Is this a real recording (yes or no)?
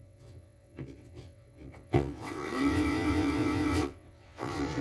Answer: no